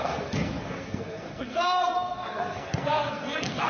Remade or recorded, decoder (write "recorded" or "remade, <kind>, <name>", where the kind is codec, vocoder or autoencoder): remade, codec, SNAC